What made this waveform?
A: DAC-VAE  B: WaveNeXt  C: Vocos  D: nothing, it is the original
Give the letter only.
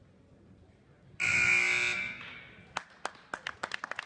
D